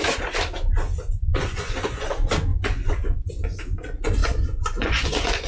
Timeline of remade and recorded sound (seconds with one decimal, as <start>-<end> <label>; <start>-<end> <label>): 0.0-1.3 recorded; 1.3-2.1 remade; 2.1-2.5 recorded; 2.5-3.6 remade; 3.6-4.2 recorded; 4.2-5.5 remade